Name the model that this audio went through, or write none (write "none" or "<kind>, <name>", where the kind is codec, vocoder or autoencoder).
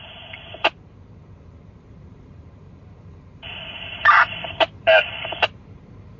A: vocoder, BigVGAN v2